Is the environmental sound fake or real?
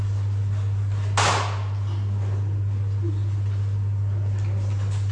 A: real